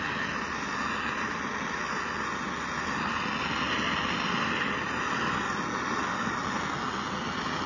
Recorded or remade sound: recorded